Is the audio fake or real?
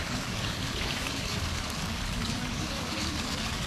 fake